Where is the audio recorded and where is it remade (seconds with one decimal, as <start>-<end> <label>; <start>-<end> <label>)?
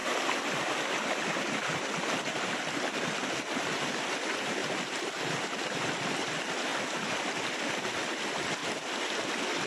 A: 0.0-0.8 remade; 0.8-9.7 recorded